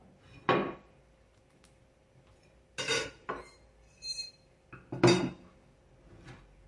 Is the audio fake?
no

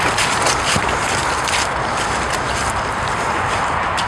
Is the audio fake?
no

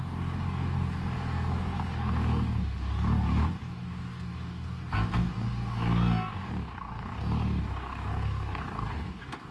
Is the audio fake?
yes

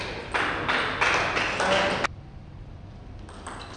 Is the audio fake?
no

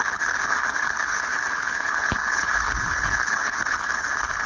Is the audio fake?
yes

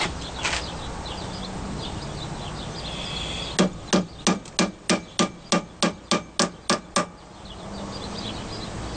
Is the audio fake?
no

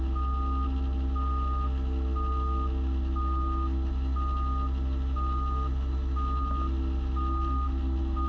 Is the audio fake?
no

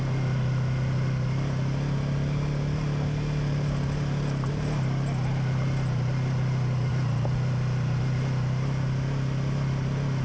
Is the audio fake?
no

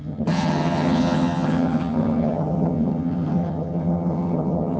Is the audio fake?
yes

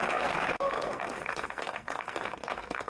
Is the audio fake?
yes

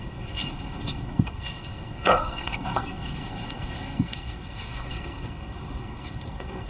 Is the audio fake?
yes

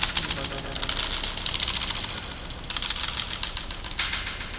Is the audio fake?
no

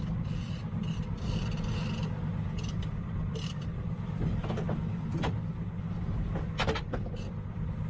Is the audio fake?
no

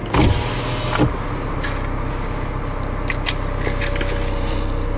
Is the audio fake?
no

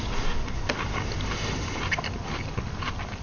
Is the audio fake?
no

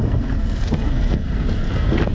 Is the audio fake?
yes